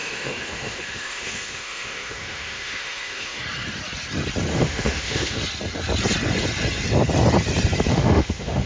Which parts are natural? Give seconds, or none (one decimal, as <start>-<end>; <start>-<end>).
3.4-4.5; 5.4-7.9